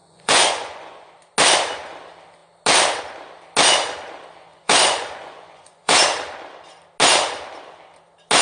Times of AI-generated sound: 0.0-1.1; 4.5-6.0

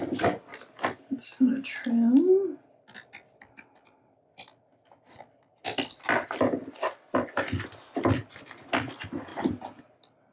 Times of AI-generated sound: none

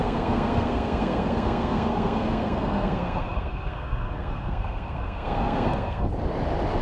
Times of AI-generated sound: 0.0-6.1

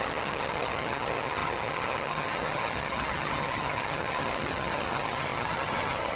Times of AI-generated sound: 0.0-6.2

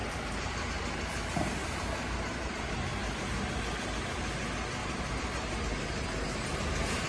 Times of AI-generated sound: 0.0-0.7; 1.6-2.5; 4.8-5.6

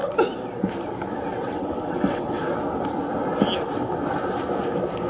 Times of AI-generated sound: 1.3-2.4

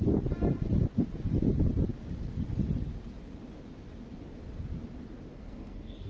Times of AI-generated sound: 5.3-6.1